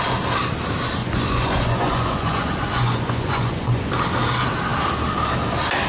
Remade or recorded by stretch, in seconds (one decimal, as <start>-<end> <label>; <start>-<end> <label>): 0.0-1.0 recorded; 1.0-3.9 remade; 3.9-5.9 recorded